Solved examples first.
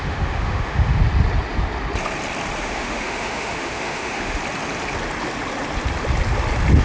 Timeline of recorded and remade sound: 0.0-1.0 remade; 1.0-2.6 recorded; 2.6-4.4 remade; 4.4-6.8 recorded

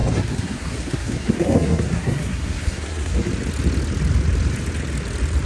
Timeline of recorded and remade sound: 0.0-3.3 remade; 3.3-5.5 recorded

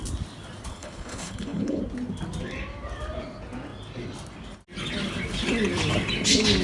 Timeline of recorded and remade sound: 0.0-0.7 recorded; 0.7-1.8 remade; 1.8-6.6 recorded

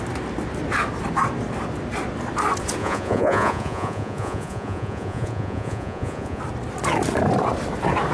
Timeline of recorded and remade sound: 0.0-2.8 recorded; 2.8-6.4 remade; 6.4-8.1 recorded